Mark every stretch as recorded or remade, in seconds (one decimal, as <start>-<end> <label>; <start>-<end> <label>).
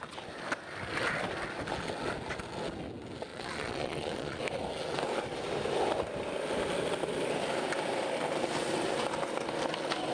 0.0-3.3 recorded; 3.3-4.4 remade; 4.4-10.1 recorded